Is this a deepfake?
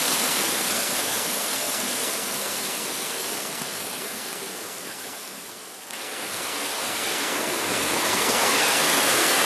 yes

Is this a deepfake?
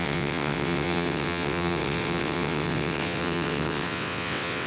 yes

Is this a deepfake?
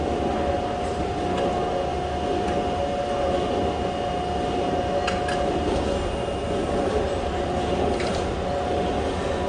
no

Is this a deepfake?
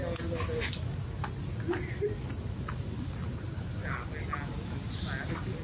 no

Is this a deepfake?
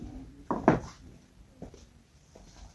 no